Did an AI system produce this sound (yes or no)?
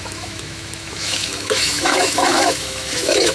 yes